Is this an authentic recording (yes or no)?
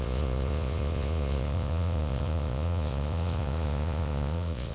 no